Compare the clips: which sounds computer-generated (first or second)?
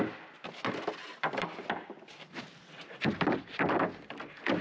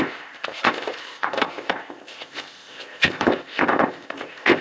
second